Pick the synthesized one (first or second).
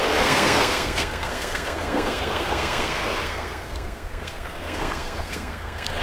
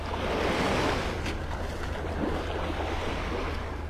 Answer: first